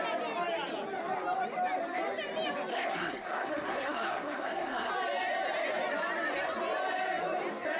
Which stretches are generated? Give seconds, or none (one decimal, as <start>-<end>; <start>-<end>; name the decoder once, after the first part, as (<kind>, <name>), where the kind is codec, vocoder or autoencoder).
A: 2.7-4.9 (codec, SNAC)